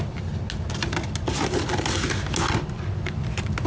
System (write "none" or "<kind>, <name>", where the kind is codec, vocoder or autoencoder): none